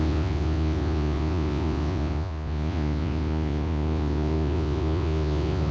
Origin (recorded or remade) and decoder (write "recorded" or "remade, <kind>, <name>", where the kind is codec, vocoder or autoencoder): remade, vocoder, Vocos